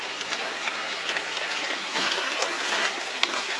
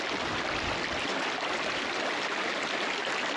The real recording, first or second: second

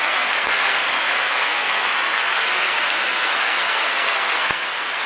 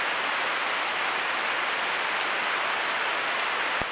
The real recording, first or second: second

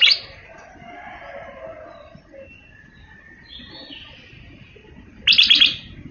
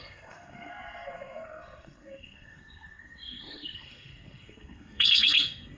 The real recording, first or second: first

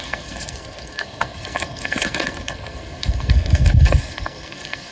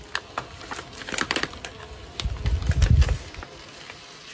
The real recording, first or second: second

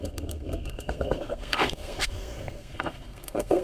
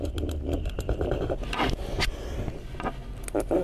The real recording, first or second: second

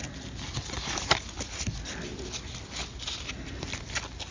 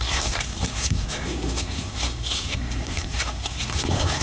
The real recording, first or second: first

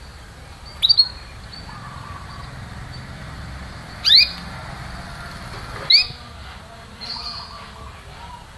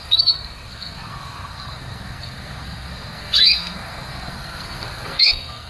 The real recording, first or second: first